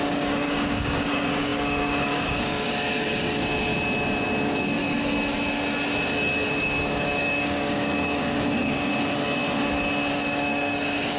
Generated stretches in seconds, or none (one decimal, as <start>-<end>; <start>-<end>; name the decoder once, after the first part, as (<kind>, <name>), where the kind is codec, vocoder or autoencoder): 0.0-3.7 (codec, DAC); 6.5-8.9; 10.1-11.2